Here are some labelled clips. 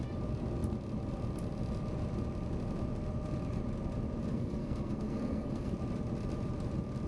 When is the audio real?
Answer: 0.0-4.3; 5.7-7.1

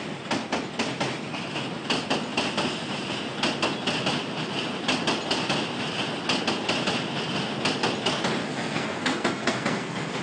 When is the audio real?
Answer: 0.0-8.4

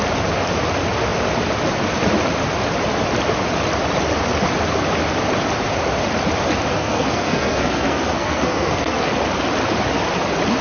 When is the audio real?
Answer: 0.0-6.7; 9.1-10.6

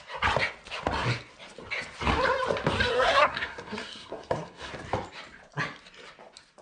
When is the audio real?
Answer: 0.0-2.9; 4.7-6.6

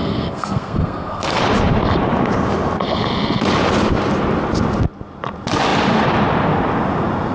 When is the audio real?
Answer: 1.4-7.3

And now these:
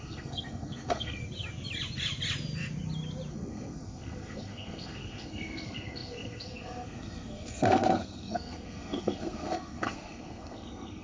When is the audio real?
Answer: 1.2-3.3